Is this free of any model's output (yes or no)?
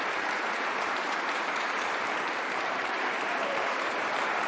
no